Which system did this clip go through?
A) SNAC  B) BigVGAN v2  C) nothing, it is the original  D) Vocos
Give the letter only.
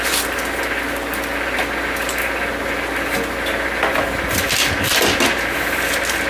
C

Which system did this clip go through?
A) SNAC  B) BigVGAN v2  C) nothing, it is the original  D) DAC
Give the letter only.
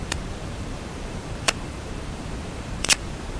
B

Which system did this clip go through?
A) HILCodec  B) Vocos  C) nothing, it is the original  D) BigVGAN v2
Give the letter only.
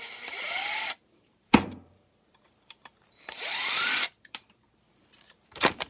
D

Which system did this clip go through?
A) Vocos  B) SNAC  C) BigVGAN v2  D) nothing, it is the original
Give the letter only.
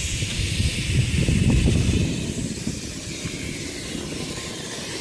C